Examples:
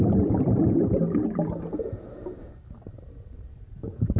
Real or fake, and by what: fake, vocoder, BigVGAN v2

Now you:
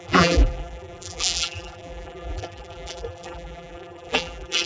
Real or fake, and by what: fake, vocoder, BigVGAN v2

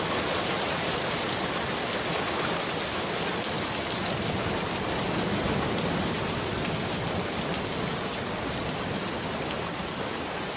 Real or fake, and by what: real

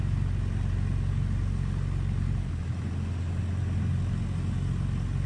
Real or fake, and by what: real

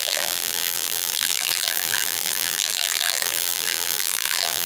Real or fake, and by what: fake, vocoder, BigVGAN v2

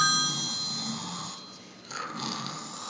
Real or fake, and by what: real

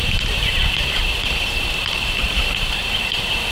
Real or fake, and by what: fake, vocoder, BigVGAN v2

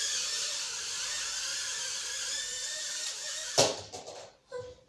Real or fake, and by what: real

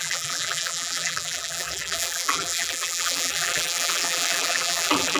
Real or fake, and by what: fake, vocoder, BigVGAN v2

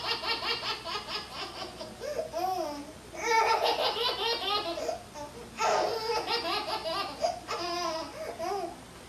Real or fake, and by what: real